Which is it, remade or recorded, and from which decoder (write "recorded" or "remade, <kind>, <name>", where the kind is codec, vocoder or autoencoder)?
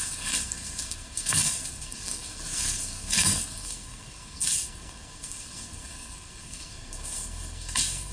remade, codec, SNAC